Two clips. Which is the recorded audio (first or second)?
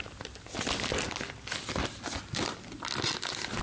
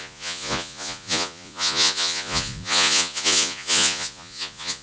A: first